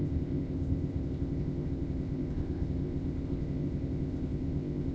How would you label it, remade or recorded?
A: remade